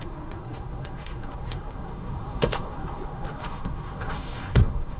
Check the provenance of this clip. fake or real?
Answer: fake